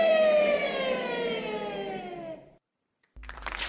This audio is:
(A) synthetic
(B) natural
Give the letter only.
A